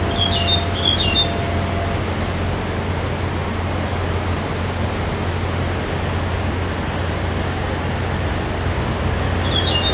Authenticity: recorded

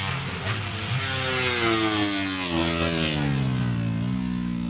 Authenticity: recorded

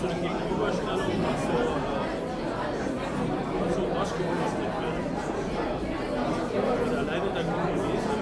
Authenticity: recorded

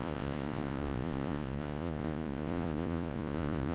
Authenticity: remade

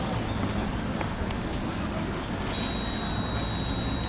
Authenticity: recorded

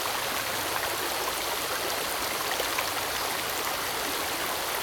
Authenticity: recorded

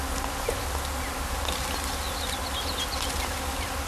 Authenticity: recorded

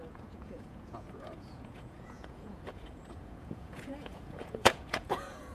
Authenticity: remade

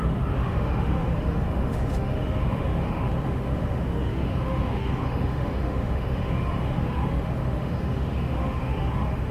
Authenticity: remade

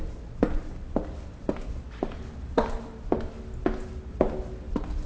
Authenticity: recorded